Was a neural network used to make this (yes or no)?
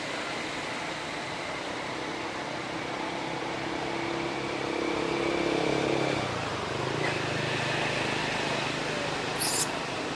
no